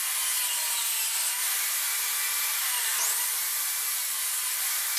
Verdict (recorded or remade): recorded